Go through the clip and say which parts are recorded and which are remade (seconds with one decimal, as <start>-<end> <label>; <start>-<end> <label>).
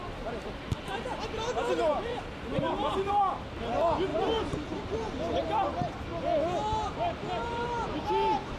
0.0-2.1 recorded; 2.1-3.1 remade; 3.1-4.1 recorded; 4.1-5.3 remade; 5.3-8.6 recorded